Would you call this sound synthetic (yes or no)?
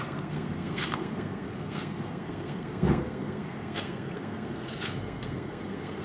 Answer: yes